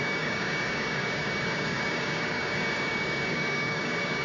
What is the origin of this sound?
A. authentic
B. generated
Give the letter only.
B